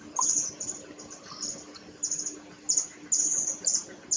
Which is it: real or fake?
real